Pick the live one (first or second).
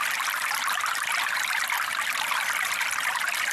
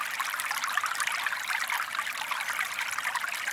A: second